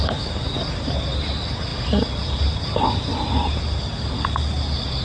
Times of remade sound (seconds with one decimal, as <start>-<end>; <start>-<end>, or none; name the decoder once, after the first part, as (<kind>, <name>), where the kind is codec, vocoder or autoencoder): none